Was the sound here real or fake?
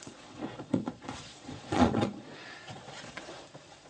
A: fake